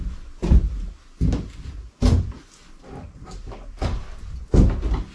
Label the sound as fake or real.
real